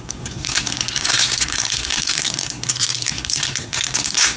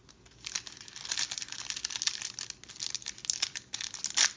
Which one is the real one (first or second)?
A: second